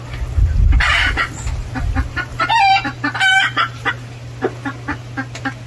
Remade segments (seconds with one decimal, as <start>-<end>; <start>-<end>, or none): 2.3-3.9